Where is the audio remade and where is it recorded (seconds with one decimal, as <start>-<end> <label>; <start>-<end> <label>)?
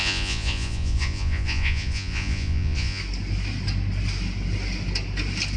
0.0-3.0 remade; 3.0-5.6 recorded